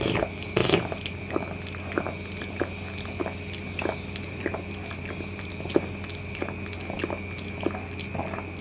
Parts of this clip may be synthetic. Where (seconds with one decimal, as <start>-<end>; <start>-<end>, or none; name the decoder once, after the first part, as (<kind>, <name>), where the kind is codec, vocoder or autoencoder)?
none